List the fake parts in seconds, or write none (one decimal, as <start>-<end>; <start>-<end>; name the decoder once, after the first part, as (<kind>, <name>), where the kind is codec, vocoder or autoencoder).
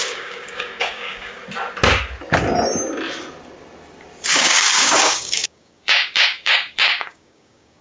0.0-1.4 (codec, DAC); 4.3-7.8